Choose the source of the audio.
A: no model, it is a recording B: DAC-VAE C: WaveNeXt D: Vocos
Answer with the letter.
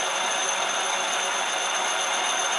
A